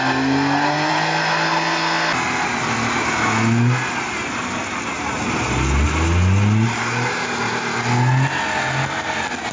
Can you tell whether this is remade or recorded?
recorded